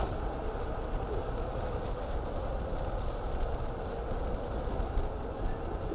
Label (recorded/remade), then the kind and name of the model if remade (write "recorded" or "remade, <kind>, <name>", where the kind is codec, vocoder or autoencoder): recorded